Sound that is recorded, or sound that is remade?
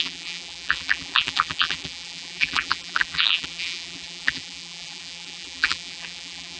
remade